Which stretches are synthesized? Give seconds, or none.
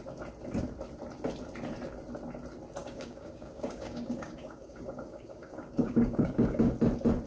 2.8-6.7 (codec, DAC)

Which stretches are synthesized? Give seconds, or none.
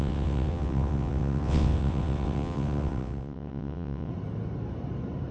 0.0-4.1 (vocoder, WaveNeXt)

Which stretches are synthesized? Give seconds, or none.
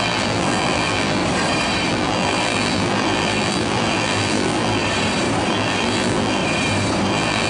0.0-1.2 (vocoder, BigVGAN v2); 1.9-4.8; 5.5-6.4; 7.1-7.5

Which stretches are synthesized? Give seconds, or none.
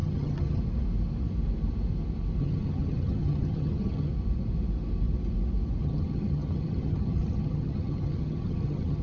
0.0-0.6 (vocoder, HiFi-GAN); 2.4-4.1; 5.8-9.0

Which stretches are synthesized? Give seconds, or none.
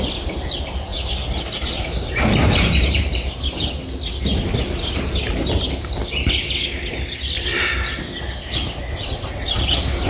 0.9-3.4 (vocoder, BigVGAN v2)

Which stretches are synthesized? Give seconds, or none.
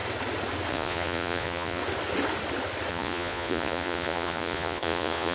0.7-1.8 (vocoder, Vocos); 2.9-5.3